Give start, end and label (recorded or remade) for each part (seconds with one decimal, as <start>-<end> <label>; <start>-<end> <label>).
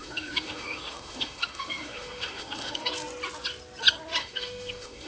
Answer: 0.0-2.9 remade; 2.9-4.2 recorded; 4.2-5.1 remade